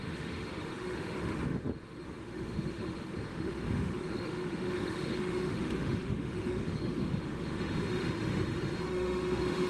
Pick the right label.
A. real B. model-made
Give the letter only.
B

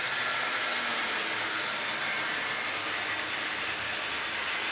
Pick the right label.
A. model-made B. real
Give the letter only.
B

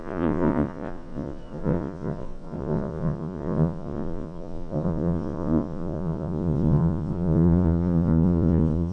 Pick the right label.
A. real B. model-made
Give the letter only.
B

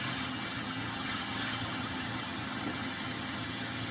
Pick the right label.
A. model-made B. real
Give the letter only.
A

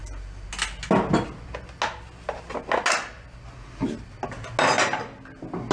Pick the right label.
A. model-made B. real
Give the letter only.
B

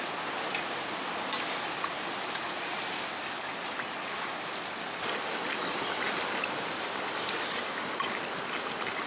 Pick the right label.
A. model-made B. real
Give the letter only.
B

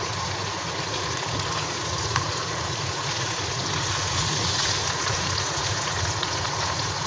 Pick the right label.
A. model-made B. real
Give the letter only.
A